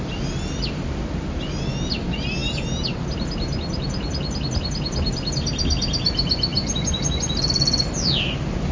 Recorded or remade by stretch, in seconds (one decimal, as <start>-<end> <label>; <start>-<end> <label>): 0.0-8.7 recorded